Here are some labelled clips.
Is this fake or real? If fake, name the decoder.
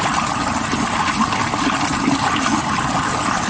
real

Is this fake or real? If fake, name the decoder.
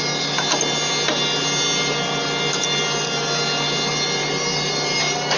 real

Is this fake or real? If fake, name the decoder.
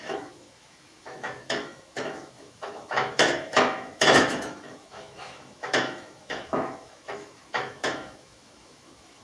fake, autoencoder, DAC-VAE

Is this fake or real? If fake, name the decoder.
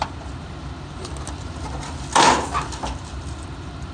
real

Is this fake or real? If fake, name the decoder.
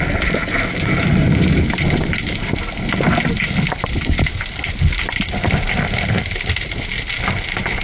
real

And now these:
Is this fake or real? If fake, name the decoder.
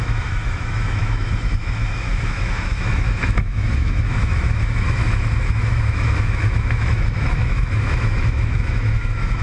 fake, autoencoder, DAC-VAE